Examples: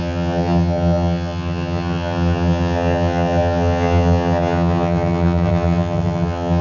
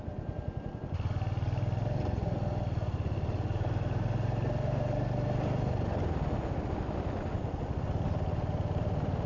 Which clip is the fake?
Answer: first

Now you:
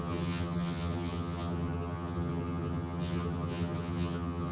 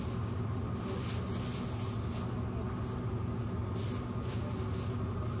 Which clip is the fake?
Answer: first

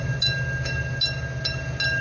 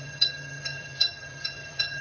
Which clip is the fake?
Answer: second